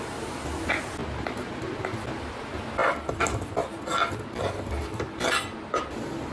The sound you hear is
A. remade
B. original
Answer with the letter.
B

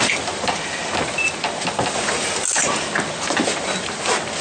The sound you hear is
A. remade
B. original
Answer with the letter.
B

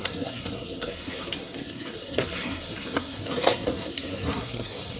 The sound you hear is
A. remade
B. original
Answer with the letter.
A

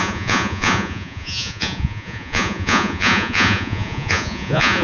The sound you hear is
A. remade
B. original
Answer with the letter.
A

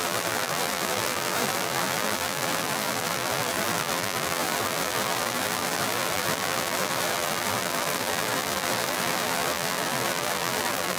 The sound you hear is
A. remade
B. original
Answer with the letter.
A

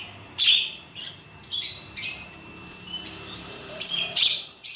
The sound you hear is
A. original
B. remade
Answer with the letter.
B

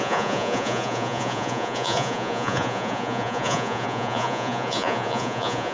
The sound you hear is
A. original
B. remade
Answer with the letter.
B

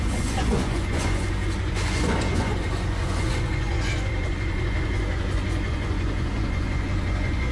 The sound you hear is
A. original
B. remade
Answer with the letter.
B